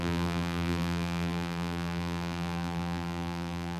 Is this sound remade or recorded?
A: remade